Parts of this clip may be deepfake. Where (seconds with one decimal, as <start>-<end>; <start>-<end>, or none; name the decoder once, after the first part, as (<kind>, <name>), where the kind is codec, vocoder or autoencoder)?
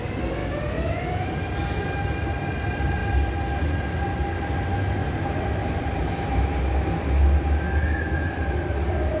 none